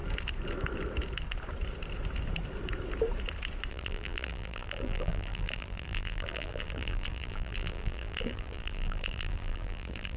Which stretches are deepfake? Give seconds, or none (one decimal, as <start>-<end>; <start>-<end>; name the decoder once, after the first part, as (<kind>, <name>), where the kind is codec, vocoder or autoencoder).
3.7-10.2 (vocoder, BigVGAN v2)